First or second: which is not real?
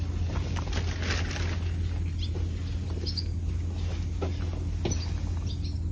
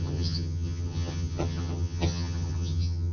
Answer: second